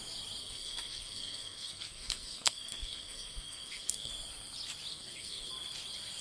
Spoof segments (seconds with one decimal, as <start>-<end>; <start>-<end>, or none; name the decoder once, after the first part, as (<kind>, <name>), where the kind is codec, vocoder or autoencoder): 0.4-4.1 (codec, SNAC); 4.9-5.5